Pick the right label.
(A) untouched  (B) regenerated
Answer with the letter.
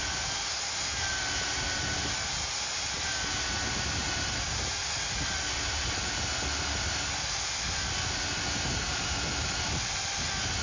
A